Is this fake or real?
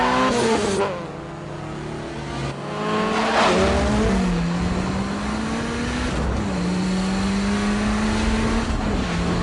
real